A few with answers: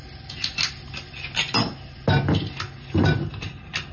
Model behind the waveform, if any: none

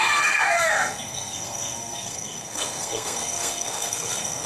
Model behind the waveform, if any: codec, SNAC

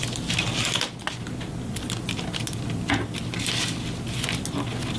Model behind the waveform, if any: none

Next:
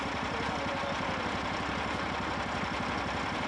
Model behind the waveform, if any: none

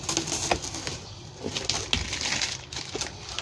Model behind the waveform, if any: none